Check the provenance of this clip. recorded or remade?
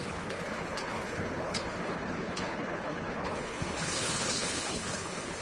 remade